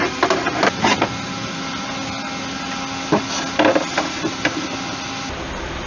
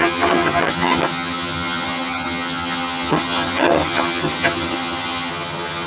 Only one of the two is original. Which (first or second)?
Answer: first